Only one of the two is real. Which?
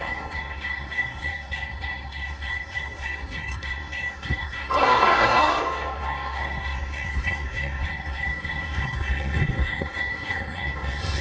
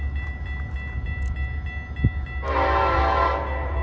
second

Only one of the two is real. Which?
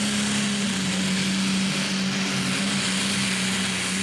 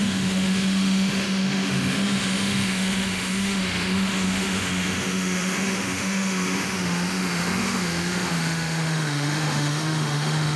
first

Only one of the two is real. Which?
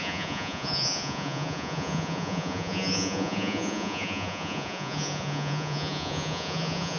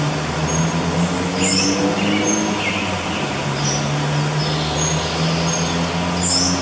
second